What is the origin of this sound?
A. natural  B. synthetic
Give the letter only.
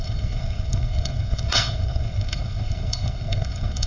B